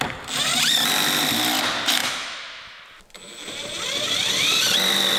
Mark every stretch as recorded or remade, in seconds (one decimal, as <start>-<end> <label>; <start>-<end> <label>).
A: 0.0-2.0 recorded; 2.0-2.8 remade; 2.8-5.2 recorded